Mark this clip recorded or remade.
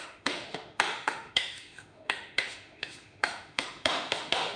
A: remade